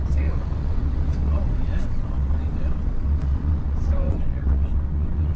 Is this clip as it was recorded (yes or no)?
no